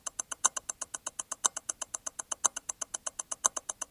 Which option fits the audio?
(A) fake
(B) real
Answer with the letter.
B